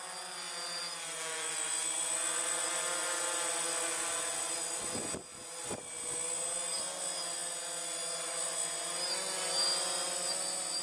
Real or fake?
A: real